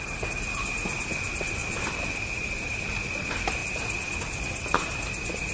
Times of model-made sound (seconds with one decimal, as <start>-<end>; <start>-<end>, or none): none